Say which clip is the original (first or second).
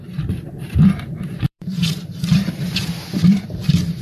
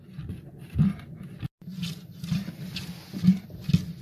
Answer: second